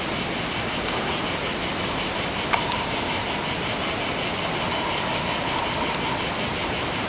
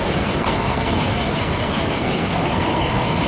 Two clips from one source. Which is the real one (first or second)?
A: first